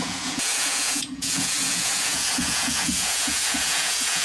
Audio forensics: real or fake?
fake